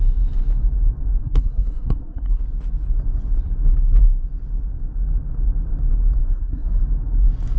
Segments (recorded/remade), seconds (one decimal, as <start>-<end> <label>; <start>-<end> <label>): 0.0-1.2 recorded; 1.2-2.4 remade; 2.4-6.2 recorded; 6.2-6.8 remade; 6.8-7.6 recorded